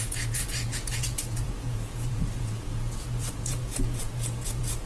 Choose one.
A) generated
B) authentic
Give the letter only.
A